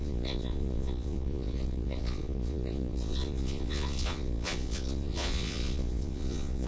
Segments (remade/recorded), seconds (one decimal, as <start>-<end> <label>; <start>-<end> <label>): 0.0-6.7 remade

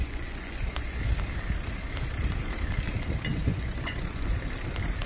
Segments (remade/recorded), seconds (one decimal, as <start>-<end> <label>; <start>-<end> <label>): 0.0-1.0 remade; 1.0-3.3 recorded; 3.3-4.3 remade; 4.3-5.1 recorded

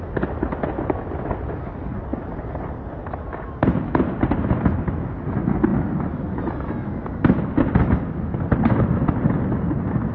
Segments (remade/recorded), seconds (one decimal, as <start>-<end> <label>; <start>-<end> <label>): 0.0-10.1 recorded

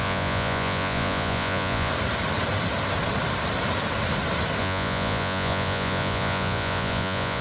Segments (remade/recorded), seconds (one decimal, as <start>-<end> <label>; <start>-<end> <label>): 0.0-1.9 remade; 1.9-4.6 recorded; 4.6-7.4 remade

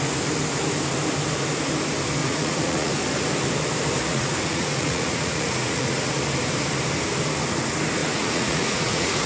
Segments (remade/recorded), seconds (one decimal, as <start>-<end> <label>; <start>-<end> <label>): 0.0-2.2 recorded; 2.2-2.9 remade; 2.9-4.1 recorded; 4.1-6.2 remade; 6.2-8.0 recorded; 8.0-9.3 remade